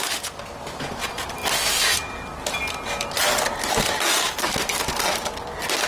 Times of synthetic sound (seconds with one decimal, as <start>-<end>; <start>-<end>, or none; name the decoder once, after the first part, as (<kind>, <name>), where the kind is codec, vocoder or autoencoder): none